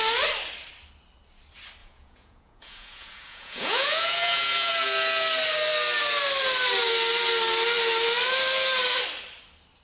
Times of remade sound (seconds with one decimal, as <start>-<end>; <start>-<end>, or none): 1.8-4.7